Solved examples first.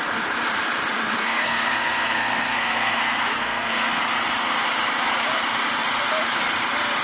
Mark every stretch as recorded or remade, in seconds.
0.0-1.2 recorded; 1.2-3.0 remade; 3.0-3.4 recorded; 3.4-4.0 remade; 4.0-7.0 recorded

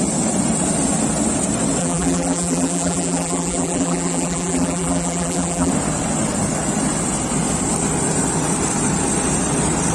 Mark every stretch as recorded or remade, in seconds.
0.0-1.8 recorded; 1.8-5.7 remade; 5.7-9.9 recorded

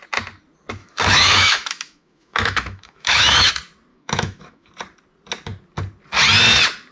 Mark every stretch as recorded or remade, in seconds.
0.0-0.8 recorded; 0.8-3.5 remade; 3.5-3.9 recorded; 3.9-4.7 remade; 4.7-6.9 recorded

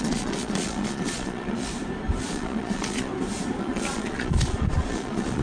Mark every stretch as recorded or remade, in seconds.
0.0-1.7 remade; 1.7-2.2 recorded; 2.2-3.1 remade; 3.1-3.6 recorded; 3.6-5.4 remade